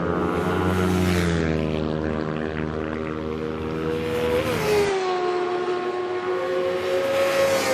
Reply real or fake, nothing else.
real